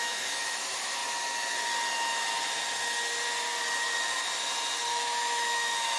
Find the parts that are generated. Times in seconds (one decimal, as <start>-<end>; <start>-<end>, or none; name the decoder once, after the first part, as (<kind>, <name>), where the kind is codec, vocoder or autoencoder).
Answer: 0.0-1.0 (autoencoder, DAC-VAE); 1.9-2.3; 4.9-6.0